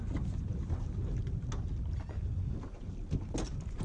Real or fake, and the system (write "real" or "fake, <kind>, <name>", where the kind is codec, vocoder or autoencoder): real